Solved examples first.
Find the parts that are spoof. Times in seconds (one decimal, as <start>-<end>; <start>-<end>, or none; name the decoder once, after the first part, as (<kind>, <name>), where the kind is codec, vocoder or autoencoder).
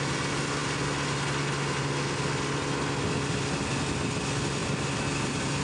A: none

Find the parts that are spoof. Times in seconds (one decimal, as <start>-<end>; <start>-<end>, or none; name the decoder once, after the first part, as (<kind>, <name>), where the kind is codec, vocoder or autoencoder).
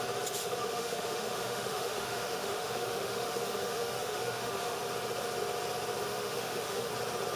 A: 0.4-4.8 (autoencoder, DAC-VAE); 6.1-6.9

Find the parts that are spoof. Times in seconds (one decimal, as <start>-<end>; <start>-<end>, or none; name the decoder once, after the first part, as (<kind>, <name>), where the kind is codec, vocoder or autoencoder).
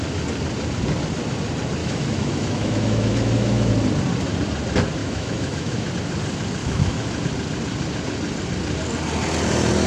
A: 1.8-3.7 (autoencoder, DAC-VAE); 5.0-5.9; 6.6-7.2